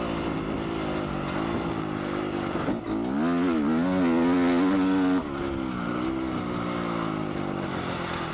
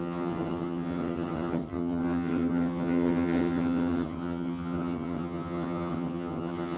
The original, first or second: first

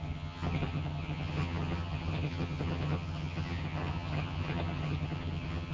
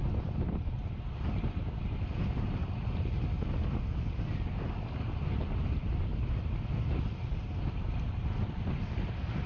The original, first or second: second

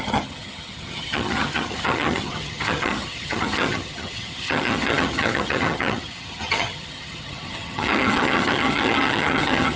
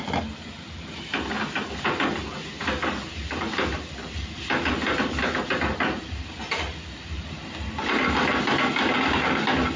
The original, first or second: second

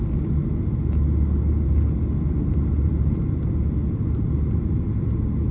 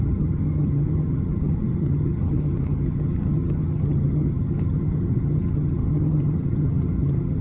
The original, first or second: first